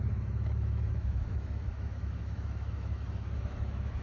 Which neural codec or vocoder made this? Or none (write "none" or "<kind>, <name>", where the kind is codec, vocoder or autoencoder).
autoencoder, DAC-VAE